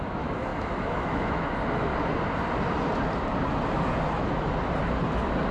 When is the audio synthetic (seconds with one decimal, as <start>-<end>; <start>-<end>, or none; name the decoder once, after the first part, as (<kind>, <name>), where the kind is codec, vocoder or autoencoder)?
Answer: 0.0-1.9 (autoencoder, DAC-VAE)